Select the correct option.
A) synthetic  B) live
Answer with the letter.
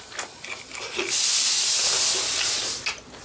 B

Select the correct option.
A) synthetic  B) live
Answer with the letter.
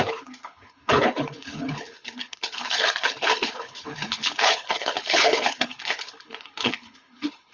A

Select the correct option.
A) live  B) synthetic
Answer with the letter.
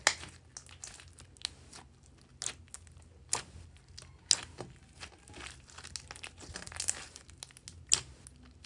A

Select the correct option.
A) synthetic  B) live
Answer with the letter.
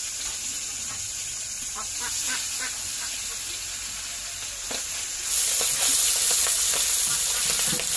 B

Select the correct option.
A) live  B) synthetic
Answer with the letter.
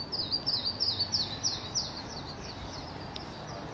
A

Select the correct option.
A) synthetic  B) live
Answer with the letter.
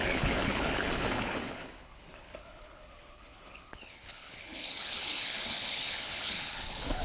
A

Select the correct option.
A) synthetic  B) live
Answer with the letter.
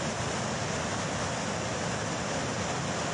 B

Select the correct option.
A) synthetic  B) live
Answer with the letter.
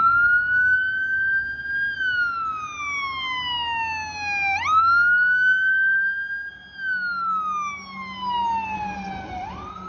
B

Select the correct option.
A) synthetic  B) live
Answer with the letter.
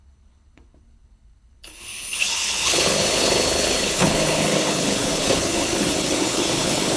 A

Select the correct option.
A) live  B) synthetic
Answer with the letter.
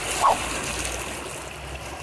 A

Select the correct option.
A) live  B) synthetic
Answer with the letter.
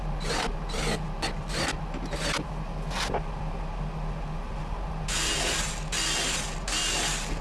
A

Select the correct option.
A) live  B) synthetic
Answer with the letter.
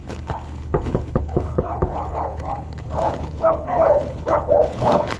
B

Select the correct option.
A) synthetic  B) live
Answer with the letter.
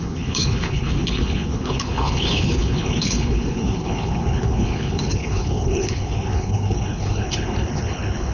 A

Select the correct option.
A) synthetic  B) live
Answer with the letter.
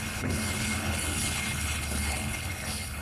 A